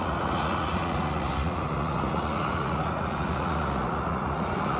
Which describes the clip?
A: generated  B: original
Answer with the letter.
A